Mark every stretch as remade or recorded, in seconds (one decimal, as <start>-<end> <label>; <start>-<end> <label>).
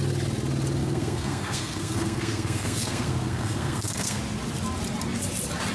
0.0-0.8 recorded; 0.8-4.2 remade; 4.2-5.7 recorded